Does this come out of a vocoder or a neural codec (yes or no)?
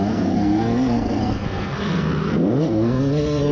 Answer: yes